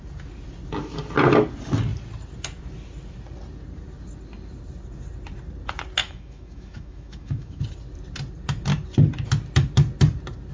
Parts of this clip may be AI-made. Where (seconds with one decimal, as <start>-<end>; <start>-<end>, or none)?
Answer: 6.0-7.6